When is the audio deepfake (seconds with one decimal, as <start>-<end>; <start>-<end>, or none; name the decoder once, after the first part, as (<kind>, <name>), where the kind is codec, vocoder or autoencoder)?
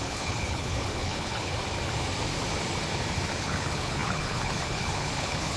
0.0-1.5 (codec, HILCodec); 3.4-5.6